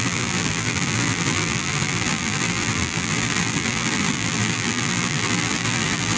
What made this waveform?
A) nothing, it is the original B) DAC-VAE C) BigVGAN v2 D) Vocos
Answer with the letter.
C